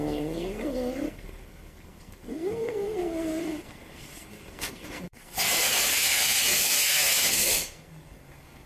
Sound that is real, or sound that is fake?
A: fake